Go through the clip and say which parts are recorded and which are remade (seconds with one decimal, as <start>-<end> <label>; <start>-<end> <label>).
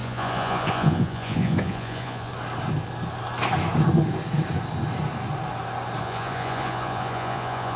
0.0-2.3 remade; 2.3-6.0 recorded; 6.0-7.8 remade